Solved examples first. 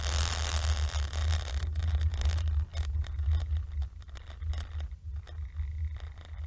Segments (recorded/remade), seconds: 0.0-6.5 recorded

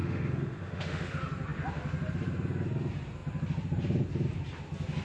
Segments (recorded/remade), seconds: 0.0-1.1 remade; 1.1-5.0 recorded

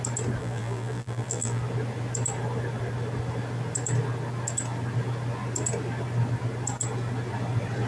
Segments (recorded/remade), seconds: 0.0-0.4 recorded; 0.4-1.6 remade; 1.6-7.9 recorded

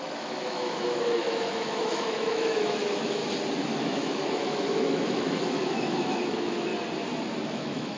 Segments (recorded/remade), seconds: 0.0-3.2 remade; 3.2-3.8 recorded; 3.8-6.7 remade; 6.7-7.5 recorded; 7.5-8.0 remade

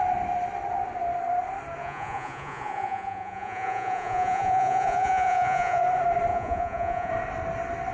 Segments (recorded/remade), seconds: 0.0-1.8 recorded; 1.8-5.8 remade; 5.8-6.3 recorded; 6.3-7.1 remade; 7.1-7.9 recorded

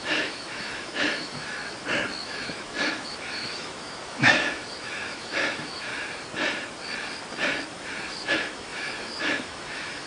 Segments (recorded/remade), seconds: 0.0-1.6 remade; 1.6-2.2 recorded; 2.2-5.9 remade; 5.9-8.1 recorded; 8.1-10.1 remade